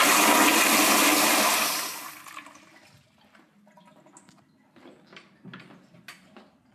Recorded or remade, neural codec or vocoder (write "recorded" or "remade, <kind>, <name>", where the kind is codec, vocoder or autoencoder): recorded